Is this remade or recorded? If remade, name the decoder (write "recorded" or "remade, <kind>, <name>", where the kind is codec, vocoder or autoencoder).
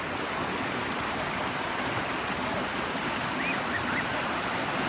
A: recorded